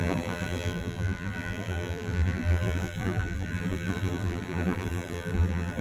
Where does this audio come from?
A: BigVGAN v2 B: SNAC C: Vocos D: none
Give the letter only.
A